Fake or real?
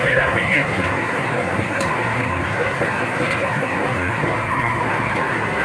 fake